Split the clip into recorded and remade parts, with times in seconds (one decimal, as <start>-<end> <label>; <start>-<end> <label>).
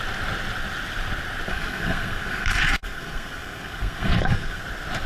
0.0-1.5 recorded; 1.5-4.6 remade; 4.6-5.1 recorded